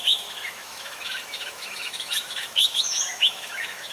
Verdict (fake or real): fake